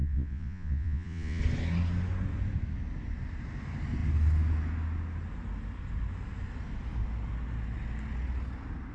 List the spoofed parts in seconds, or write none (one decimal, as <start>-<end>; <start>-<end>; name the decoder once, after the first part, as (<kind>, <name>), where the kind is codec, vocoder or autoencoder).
0.0-1.4 (vocoder, Vocos)

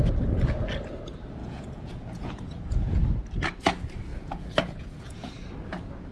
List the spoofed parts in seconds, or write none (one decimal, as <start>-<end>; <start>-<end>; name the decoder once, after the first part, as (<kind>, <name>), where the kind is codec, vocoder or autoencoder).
1.4-3.0 (vocoder, Vocos); 4.1-5.3

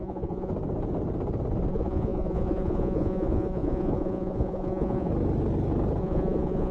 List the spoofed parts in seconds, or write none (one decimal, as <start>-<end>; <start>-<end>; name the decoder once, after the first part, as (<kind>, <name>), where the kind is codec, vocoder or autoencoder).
0.0-0.5 (vocoder, Vocos); 1.7-5.1; 6.0-6.7

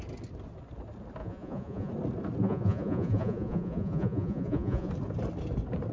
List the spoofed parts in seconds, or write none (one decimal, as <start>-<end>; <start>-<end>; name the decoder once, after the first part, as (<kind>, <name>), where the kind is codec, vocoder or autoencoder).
1.2-1.9 (vocoder, Vocos); 2.4-4.9

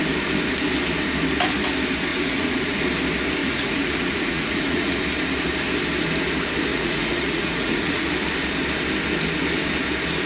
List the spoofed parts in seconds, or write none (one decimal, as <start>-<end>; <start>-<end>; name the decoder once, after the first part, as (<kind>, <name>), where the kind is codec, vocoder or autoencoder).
2.1-2.8 (vocoder, Vocos); 3.4-5.0; 6.7-8.1

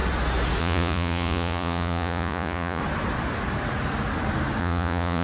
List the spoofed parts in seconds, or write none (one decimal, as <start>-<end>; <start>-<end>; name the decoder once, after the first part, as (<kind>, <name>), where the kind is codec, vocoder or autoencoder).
0.6-2.8 (vocoder, Vocos); 4.6-5.2